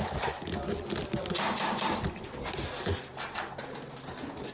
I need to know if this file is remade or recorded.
recorded